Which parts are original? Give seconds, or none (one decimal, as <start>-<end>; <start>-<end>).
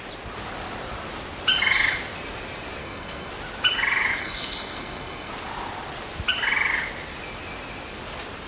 0.0-2.8; 3.3-4.2; 5.3-8.5